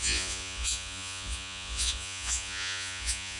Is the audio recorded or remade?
remade